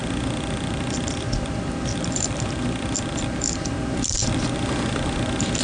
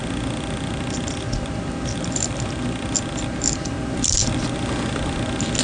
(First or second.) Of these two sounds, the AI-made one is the first